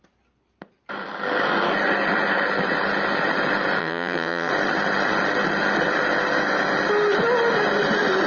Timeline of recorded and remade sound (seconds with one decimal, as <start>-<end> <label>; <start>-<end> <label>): 0.0-3.8 recorded; 3.8-4.5 remade; 4.5-8.3 recorded